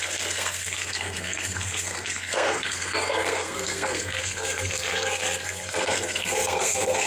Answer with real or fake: fake